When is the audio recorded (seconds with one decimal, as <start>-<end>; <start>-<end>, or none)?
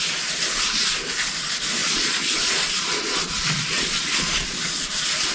0.0-1.8